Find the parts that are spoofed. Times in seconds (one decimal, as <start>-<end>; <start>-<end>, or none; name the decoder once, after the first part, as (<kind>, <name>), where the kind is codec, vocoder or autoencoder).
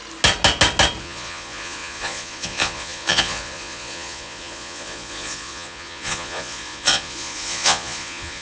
1.0-8.4 (vocoder, Vocos)